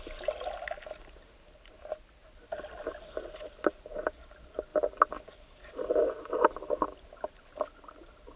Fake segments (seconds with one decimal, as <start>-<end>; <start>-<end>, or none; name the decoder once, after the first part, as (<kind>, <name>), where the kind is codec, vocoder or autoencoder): none